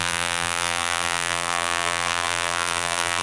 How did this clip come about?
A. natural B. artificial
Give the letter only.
B